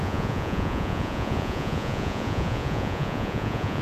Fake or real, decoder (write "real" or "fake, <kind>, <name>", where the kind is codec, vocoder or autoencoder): fake, vocoder, Vocos